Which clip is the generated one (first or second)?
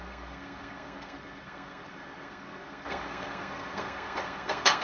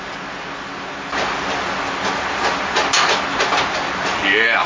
first